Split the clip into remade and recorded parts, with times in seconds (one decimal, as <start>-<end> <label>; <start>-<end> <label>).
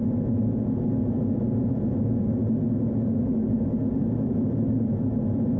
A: 0.0-2.4 remade; 2.4-3.2 recorded; 3.2-5.6 remade